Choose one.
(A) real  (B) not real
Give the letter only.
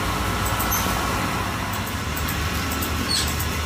A